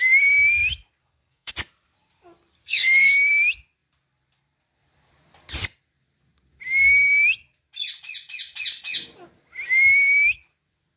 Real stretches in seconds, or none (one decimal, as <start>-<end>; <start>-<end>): 0.0-1.0; 1.5-2.6; 3.1-11.0

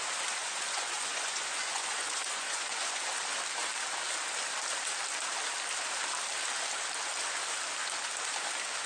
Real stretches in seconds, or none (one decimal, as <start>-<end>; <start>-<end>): 0.0-0.4; 3.0-8.9

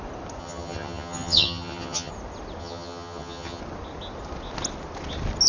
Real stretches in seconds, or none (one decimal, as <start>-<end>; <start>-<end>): 0.0-0.4; 2.1-2.6; 3.6-5.5

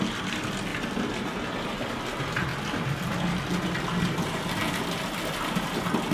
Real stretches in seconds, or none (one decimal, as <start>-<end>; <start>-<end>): 0.0-6.1